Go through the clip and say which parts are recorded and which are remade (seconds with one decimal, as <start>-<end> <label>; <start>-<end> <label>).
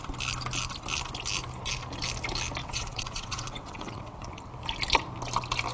0.0-2.6 recorded; 2.6-4.4 remade; 4.4-5.7 recorded